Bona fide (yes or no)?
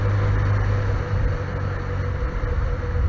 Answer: yes